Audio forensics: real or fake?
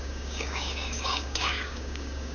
fake